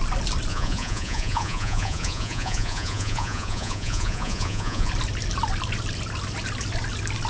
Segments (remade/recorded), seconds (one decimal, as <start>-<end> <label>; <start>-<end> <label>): 0.0-0.5 recorded; 0.5-4.9 remade; 4.9-7.3 recorded